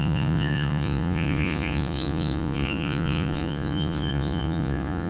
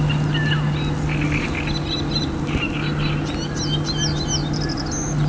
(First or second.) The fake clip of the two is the first